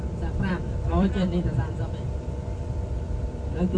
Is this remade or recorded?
remade